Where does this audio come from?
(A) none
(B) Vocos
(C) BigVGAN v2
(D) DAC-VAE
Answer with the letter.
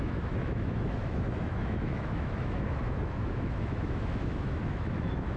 D